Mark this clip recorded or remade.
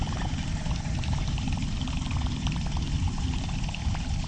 recorded